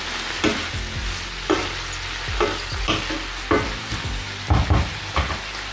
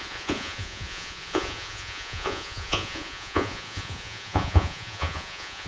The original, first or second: first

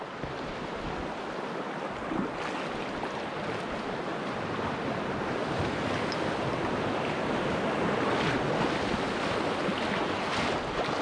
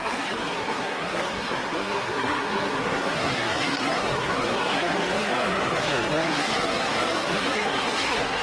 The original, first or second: first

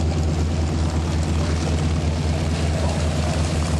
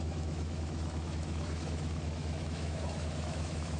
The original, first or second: first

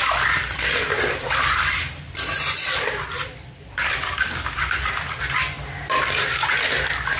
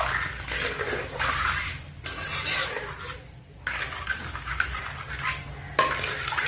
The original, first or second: second